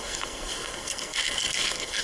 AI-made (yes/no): yes